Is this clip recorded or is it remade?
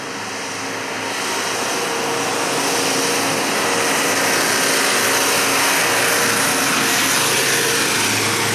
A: recorded